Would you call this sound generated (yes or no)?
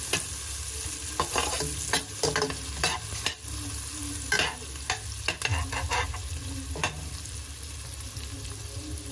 no